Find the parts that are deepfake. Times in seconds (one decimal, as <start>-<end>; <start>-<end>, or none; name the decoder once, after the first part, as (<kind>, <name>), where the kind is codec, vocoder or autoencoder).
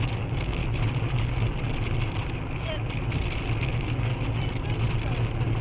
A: 0.0-0.6 (codec, DAC); 3.6-4.1